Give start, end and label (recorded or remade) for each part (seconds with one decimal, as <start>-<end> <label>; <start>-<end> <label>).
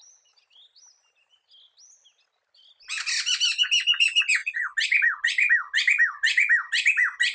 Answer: 0.0-7.3 recorded